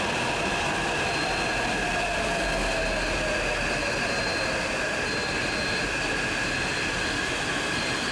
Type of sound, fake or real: real